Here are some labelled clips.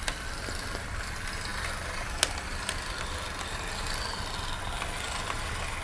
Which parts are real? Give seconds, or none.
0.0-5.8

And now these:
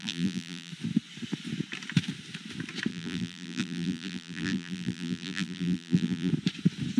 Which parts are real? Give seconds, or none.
0.7-2.9; 6.3-7.0

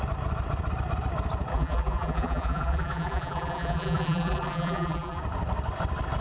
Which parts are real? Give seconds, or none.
0.0-1.5; 5.2-6.2

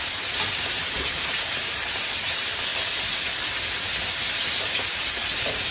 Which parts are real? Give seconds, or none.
2.7-3.8

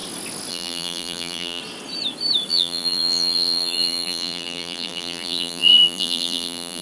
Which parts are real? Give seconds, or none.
0.0-0.5; 1.6-2.5

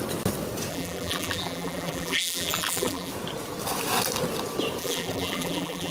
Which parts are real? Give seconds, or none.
0.0-0.7; 3.1-4.8

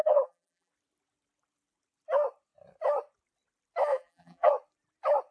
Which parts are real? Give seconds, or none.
0.7-3.9; 4.5-5.3

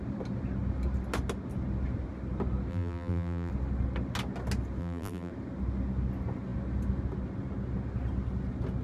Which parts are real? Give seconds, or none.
0.0-2.7; 3.5-4.8; 5.3-8.8